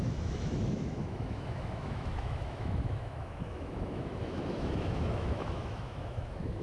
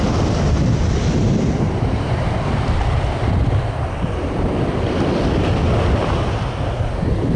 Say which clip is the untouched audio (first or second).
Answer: second